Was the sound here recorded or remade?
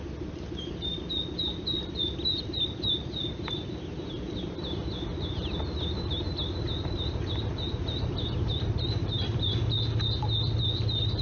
recorded